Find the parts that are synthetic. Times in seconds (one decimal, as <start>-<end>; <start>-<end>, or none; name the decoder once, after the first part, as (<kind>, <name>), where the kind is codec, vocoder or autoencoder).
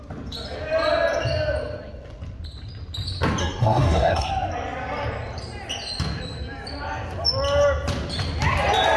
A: 3.4-4.3 (codec, SNAC)